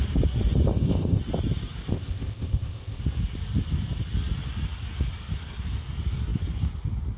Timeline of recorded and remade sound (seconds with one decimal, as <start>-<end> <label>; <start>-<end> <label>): 0.0-0.7 recorded; 0.7-1.2 remade; 1.2-1.9 recorded; 1.9-3.0 remade; 3.0-7.2 recorded